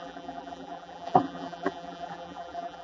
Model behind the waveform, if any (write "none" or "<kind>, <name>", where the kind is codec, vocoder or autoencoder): vocoder, BigVGAN v2